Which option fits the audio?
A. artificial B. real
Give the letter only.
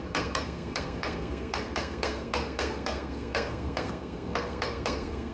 A